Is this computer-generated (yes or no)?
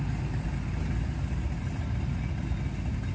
no